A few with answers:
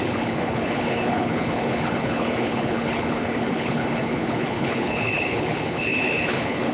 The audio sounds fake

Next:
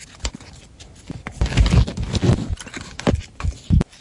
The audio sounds real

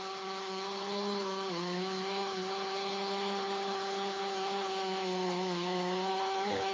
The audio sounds fake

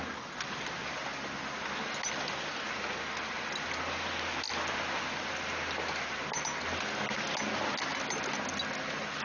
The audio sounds real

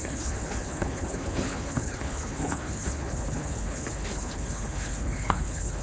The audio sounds fake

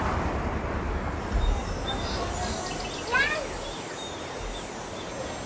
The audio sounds real